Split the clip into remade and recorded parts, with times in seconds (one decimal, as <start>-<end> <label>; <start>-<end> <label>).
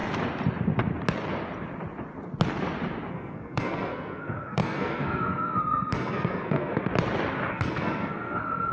0.0-3.1 recorded; 3.1-6.9 remade; 6.9-7.5 recorded; 7.5-8.7 remade